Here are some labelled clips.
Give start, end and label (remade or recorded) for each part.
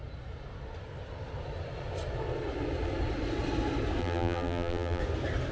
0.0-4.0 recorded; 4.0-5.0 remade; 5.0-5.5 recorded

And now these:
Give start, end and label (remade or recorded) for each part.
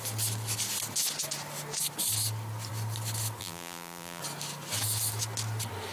0.0-3.4 recorded; 3.4-4.2 remade; 4.2-5.9 recorded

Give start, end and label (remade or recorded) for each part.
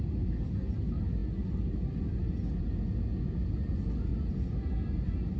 0.0-5.4 recorded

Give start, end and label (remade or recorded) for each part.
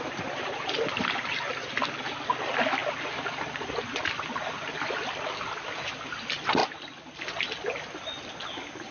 0.0-2.8 recorded; 2.8-3.7 remade; 3.7-8.9 recorded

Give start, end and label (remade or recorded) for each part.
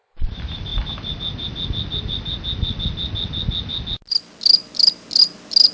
0.0-5.7 recorded